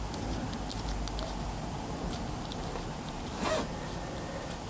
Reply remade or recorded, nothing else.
recorded